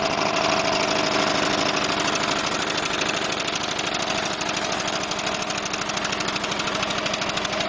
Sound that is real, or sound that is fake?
real